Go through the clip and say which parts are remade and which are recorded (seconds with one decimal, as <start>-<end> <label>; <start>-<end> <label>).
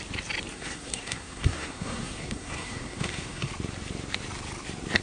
0.0-0.5 recorded; 0.5-3.5 remade; 3.5-5.0 recorded